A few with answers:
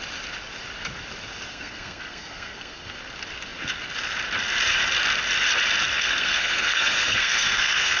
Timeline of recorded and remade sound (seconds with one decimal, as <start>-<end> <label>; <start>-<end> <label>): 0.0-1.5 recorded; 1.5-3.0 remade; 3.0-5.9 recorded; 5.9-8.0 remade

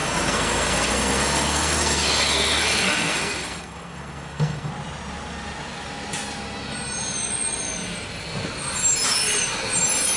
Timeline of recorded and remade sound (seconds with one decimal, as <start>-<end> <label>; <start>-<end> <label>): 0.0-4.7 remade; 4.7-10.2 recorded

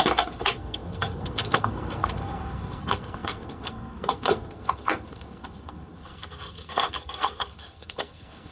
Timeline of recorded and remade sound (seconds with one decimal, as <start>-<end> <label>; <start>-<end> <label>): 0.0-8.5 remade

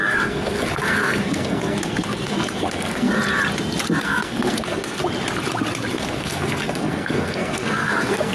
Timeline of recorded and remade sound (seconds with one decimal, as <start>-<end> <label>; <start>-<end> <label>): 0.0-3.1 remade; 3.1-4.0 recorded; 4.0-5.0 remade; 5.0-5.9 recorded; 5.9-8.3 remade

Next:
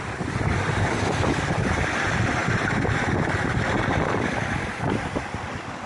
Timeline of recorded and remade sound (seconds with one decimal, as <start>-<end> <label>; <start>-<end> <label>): 0.0-5.9 recorded

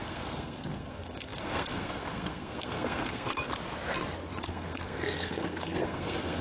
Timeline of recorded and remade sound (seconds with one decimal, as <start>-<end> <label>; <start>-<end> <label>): 0.0-3.5 remade; 3.5-4.5 recorded; 4.5-6.4 remade

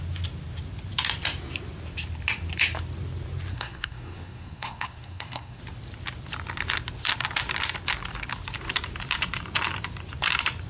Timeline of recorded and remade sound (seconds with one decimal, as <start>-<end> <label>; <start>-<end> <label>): 0.0-3.5 recorded; 3.5-5.6 remade; 5.6-10.7 recorded

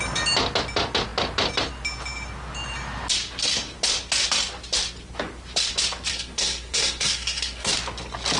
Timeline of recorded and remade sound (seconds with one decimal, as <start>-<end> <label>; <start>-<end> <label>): 0.0-6.1 recorded; 6.1-7.7 remade; 7.7-8.4 recorded